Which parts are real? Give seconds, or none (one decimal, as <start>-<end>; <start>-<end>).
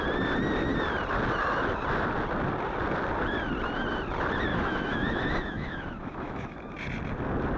0.0-4.5; 6.7-7.6